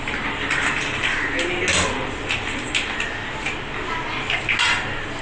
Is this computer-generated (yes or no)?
no